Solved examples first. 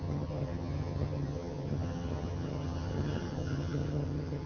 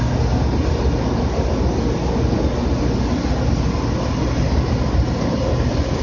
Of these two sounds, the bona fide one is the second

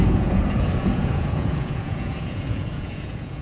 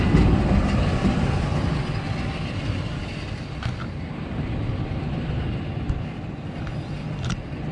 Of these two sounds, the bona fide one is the second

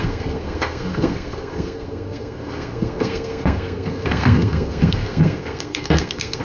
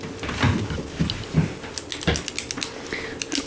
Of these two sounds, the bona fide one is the second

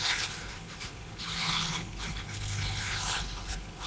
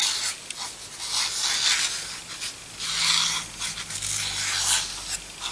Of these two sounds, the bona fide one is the second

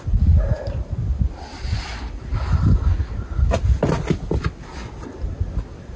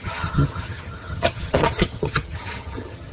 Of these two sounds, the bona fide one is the first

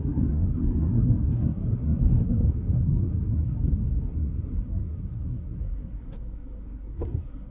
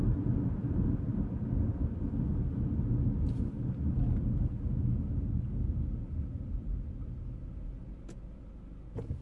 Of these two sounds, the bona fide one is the second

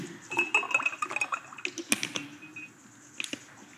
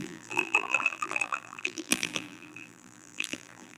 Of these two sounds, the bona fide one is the first